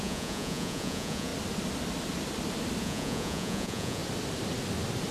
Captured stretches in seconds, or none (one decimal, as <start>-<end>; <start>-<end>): 1.3-2.8; 4.0-5.1